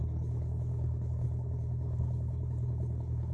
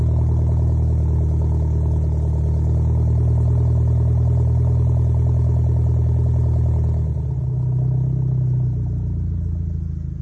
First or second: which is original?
second